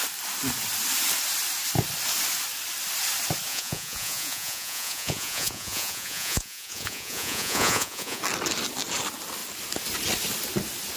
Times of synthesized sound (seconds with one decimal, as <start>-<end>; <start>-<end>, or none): 3.5-8.2